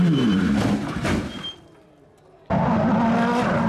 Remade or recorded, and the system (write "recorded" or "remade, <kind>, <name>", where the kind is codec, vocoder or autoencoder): recorded